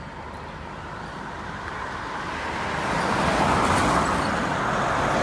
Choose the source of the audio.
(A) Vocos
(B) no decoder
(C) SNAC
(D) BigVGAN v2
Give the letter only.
B